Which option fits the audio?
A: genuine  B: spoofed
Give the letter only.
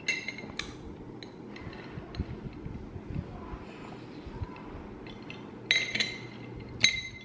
A